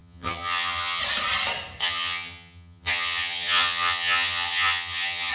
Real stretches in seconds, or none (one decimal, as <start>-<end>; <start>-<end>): 1.0-1.8